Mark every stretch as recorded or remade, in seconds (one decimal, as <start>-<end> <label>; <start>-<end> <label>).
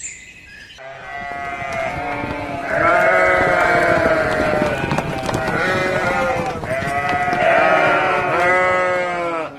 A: 0.0-2.6 recorded; 2.6-5.1 remade; 5.1-9.6 recorded